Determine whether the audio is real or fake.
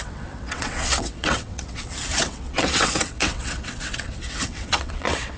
fake